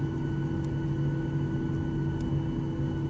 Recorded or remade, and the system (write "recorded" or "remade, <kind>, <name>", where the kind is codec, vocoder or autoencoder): recorded